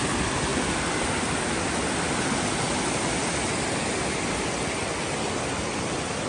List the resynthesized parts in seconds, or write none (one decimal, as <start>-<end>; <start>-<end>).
none